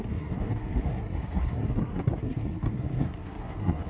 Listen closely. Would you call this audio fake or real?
fake